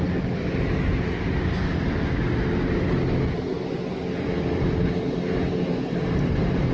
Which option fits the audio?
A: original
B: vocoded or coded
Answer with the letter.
A